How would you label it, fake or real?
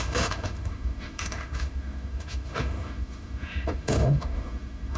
fake